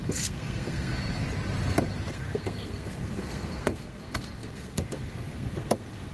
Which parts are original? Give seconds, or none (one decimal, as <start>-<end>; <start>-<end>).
0.9-2.1